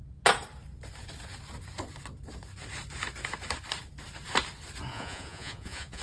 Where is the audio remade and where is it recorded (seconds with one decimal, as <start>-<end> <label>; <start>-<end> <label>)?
0.0-4.9 recorded; 4.9-6.0 remade